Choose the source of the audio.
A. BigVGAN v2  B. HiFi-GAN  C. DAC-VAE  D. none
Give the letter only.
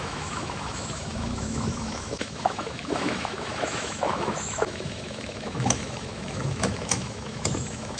C